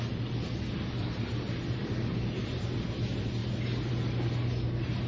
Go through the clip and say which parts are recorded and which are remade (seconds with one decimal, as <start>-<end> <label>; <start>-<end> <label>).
0.0-5.1 recorded